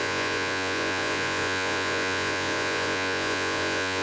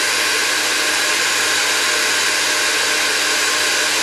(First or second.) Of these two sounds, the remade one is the first